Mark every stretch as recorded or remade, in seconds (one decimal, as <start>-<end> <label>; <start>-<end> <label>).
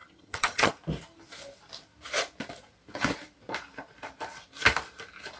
0.0-0.7 remade; 0.7-5.4 recorded